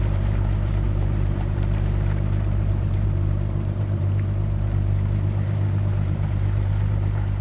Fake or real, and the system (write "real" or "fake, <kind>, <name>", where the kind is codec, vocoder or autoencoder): fake, vocoder, BigVGAN v2